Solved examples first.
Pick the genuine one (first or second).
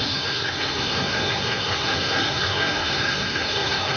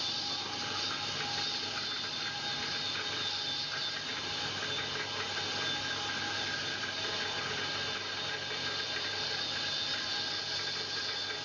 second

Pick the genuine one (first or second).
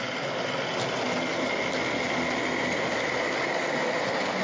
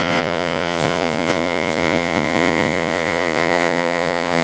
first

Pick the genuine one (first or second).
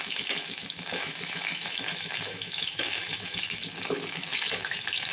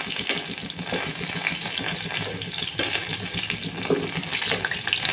second